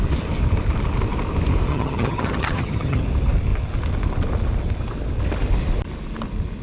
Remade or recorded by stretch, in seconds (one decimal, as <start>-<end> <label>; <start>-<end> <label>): 0.0-1.7 recorded; 1.7-3.0 remade; 3.0-6.6 recorded